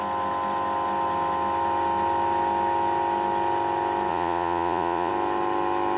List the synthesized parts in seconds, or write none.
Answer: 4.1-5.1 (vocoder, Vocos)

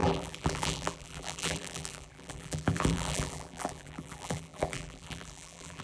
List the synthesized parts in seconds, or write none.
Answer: 0.0-5.8 (vocoder, BigVGAN v2)

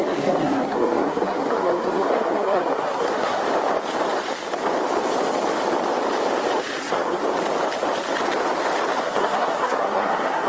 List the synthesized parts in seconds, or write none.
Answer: 0.0-3.4 (codec, SNAC); 6.8-7.2; 9.0-10.5

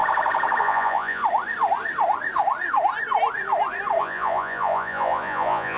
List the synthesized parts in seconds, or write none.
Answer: 0.6-1.2 (vocoder, Vocos); 4.0-5.8

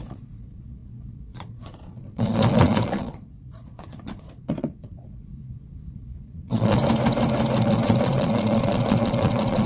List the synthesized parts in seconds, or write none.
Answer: 0.0-6.8 (vocoder, Vocos); 7.6-9.7

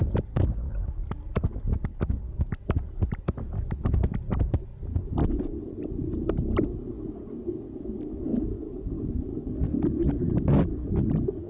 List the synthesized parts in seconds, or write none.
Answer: none

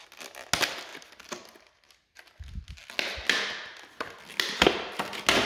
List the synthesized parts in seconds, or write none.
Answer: none